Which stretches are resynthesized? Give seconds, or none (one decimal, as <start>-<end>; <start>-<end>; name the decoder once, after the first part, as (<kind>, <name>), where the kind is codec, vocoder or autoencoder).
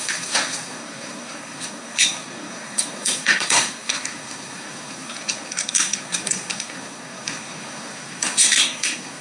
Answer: 0.0-9.2 (codec, SNAC)